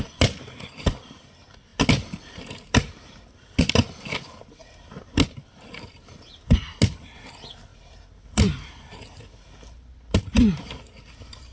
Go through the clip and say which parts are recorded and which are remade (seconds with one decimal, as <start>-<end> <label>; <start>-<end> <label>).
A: 0.0-11.5 recorded